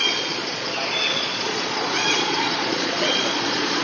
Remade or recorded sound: remade